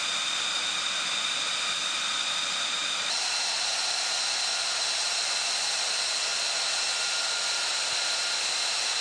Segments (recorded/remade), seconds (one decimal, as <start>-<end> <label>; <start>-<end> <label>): 0.0-9.0 recorded

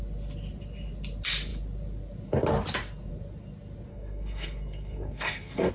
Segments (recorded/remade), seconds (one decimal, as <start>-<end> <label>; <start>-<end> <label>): 0.0-3.9 recorded; 3.9-5.7 remade

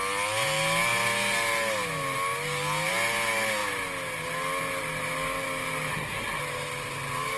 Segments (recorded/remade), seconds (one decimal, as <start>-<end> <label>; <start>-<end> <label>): 0.0-5.9 recorded; 5.9-6.4 remade; 6.4-7.4 recorded

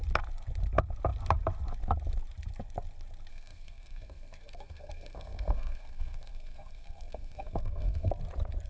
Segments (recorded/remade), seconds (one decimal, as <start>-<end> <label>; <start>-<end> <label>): 0.0-3.3 recorded; 3.3-8.1 remade; 8.1-8.7 recorded